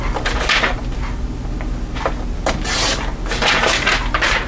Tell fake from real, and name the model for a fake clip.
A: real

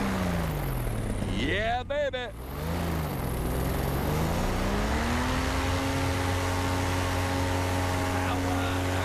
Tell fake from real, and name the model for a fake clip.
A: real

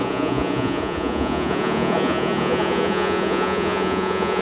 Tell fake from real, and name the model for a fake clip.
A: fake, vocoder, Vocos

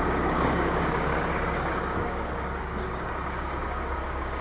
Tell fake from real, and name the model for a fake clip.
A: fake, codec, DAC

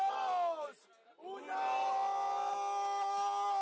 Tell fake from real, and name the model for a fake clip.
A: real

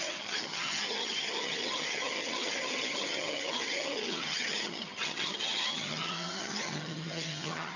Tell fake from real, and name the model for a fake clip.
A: fake, vocoder, HiFi-GAN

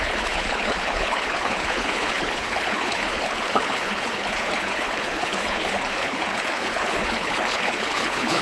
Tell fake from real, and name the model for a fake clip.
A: fake, codec, HILCodec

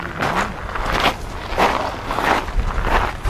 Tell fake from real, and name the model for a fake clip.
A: real